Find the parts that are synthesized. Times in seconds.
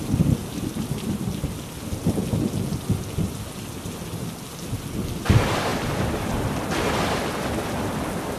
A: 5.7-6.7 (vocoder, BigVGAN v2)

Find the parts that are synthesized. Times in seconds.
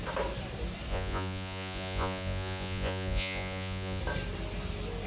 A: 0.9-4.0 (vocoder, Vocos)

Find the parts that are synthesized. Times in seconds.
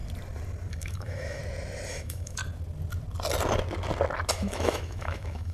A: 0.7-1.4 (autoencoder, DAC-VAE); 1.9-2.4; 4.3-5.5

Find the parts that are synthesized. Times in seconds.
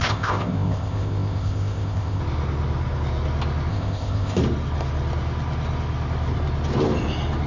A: 0.0-2.2 (codec, ZipCodec); 3.7-4.4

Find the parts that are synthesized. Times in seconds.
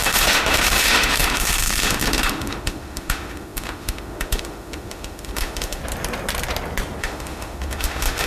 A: 0.0-5.8 (autoencoder, DAC-VAE); 7.0-8.3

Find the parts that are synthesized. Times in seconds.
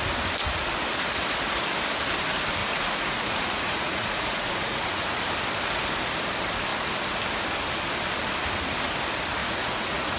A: 2.6-5.2 (vocoder, Vocos); 9.4-10.2